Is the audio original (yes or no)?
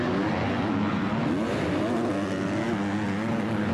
yes